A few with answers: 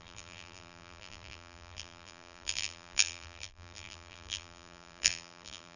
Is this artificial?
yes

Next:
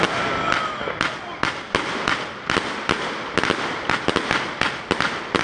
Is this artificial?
no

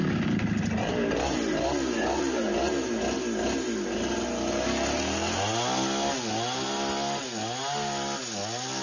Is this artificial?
no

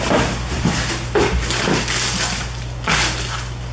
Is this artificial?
no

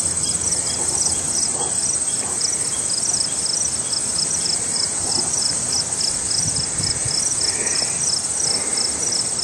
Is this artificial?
no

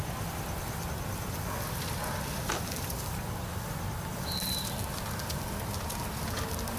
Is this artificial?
no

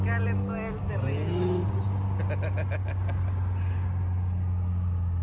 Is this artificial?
no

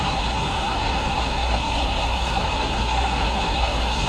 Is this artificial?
yes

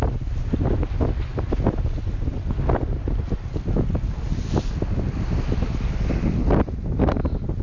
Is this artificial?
no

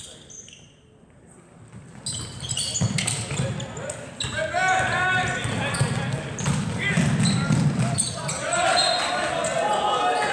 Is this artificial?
no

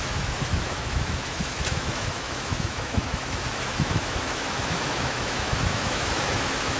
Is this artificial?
yes